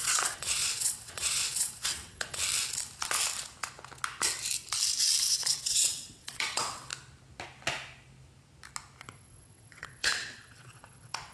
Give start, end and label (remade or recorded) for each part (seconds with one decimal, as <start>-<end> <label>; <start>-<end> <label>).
0.0-2.4 remade; 2.4-5.2 recorded; 5.2-6.9 remade; 6.9-9.0 recorded; 9.0-11.3 remade